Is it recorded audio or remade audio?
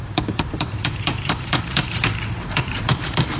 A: remade